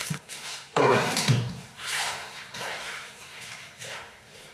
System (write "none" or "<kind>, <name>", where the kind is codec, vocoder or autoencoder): codec, SNAC